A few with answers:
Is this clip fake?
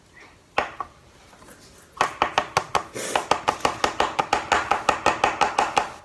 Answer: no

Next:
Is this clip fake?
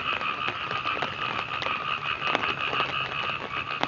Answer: no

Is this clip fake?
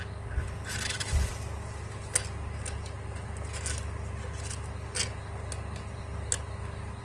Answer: no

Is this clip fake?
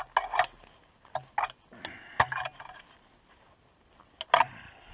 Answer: no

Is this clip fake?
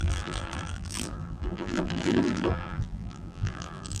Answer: yes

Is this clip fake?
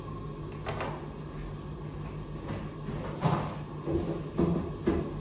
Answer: no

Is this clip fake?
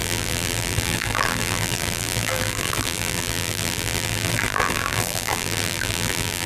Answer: yes